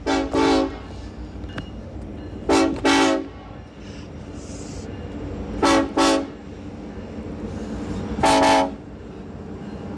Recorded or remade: recorded